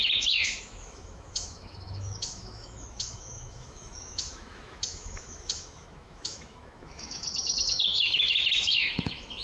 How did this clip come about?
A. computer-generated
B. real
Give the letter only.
A